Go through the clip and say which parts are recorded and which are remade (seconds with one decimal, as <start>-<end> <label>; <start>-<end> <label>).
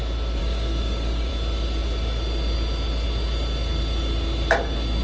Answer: 0.0-0.4 recorded; 0.4-1.3 remade; 1.3-5.0 recorded